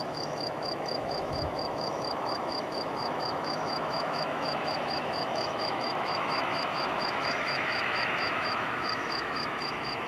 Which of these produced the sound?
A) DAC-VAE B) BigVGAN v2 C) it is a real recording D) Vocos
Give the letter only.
A